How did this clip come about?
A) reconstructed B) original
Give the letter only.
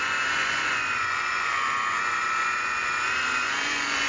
A